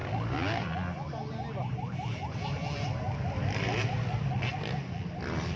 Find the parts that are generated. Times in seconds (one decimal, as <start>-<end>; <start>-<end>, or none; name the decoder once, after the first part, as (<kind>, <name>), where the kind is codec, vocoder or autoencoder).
1.7-2.6 (vocoder, BigVGAN v2)